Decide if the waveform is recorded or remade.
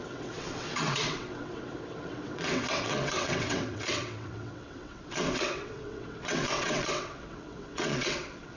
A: remade